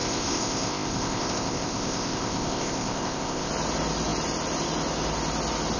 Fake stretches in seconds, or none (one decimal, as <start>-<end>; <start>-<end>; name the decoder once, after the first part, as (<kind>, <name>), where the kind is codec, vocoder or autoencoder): 0.0-3.5 (codec, ZipCodec)